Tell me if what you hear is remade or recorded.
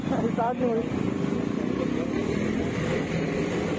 recorded